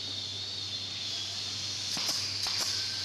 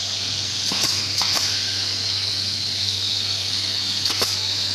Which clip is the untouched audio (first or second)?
first